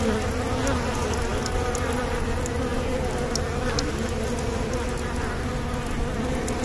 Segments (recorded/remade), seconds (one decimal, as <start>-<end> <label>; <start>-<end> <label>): 0.0-6.6 recorded